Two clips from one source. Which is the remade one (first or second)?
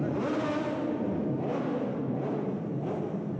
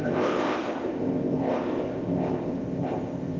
second